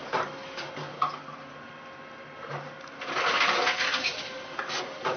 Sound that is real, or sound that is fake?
real